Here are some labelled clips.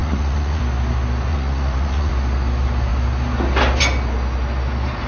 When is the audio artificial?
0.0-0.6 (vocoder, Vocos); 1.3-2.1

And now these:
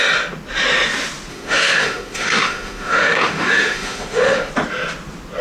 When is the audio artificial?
1.3-4.5 (autoencoder, DAC-VAE)

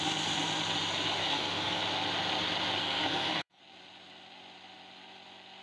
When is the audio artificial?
1.2-1.8 (codec, SNAC); 2.8-3.6

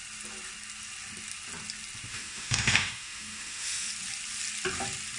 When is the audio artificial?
2.1-3.9 (autoencoder, DAC-VAE)

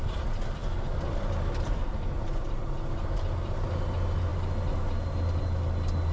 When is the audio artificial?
none

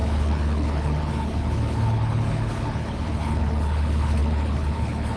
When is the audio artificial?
0.0-5.2 (codec, HILCodec)

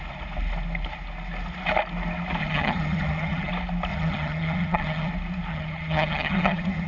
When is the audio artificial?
2.4-3.5 (vocoder, HiFi-GAN); 3.9-5.1; 5.5-6.9

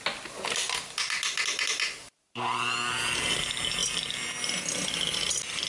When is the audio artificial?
none